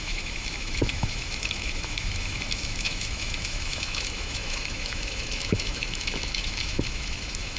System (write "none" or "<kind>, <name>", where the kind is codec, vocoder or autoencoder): autoencoder, DAC-VAE